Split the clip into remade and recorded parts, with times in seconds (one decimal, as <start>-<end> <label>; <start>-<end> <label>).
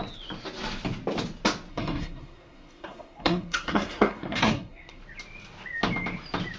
0.0-1.7 recorded; 1.7-5.0 remade; 5.0-6.6 recorded